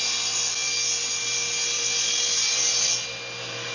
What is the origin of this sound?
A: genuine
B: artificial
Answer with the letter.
A